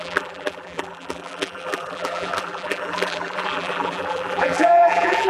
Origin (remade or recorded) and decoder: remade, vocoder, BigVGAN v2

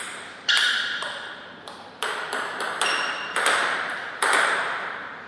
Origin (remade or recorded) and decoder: remade, vocoder, BigVGAN v2